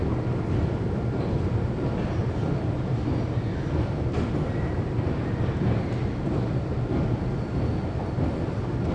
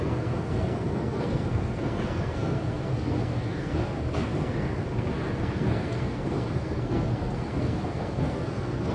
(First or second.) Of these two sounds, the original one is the first